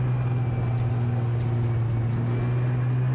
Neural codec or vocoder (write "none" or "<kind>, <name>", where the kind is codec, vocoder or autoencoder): none